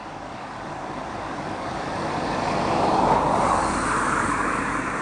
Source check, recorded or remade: remade